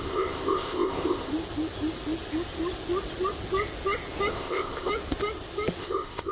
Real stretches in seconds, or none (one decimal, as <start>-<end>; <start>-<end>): 1.3-4.3; 4.9-5.8